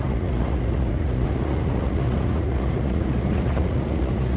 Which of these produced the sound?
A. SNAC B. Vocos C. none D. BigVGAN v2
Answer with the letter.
B